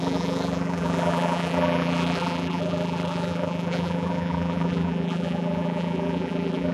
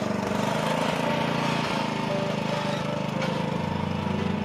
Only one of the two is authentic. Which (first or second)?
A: second